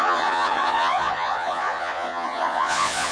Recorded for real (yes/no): no